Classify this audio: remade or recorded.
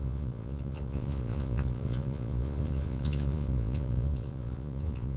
remade